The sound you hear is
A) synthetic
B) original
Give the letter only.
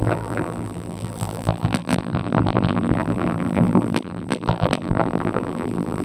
A